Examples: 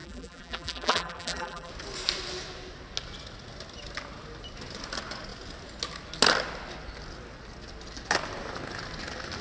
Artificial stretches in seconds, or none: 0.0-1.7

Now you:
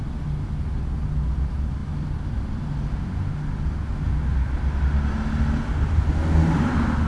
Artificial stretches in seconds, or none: none